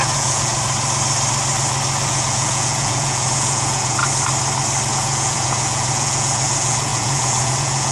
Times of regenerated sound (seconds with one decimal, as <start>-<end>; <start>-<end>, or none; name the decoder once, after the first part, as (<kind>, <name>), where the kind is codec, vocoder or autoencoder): 0.0-0.5 (vocoder, Vocos); 2.0-4.0; 4.9-7.9